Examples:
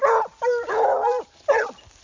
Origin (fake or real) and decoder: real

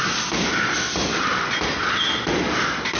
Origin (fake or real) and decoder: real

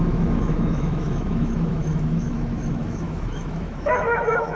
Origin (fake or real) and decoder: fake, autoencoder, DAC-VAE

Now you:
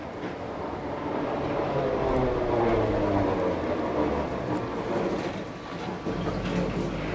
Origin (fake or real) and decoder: real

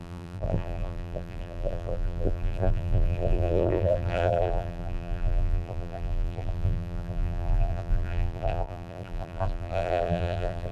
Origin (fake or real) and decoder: fake, vocoder, BigVGAN v2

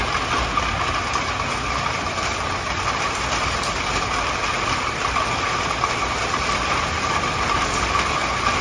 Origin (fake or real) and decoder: real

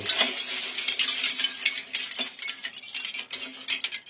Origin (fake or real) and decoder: real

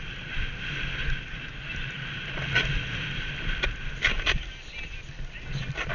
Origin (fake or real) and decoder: real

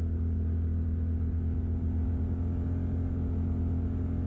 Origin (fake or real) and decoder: real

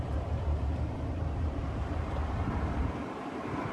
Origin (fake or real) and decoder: fake, vocoder, BigVGAN v2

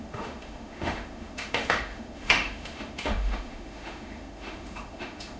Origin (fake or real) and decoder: fake, autoencoder, DAC-VAE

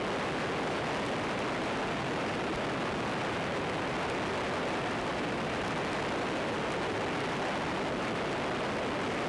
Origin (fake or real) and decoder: real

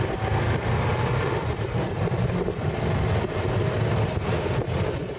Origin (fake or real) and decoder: real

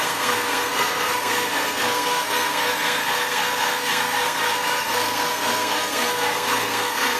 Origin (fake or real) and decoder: fake, codec, SNAC